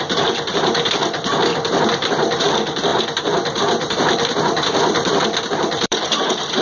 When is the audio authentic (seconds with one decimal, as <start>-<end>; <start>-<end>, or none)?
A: 1.5-2.4; 2.9-3.6

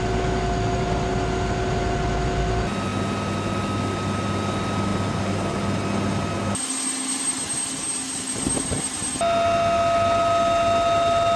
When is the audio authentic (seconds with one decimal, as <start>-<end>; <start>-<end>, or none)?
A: 0.0-11.4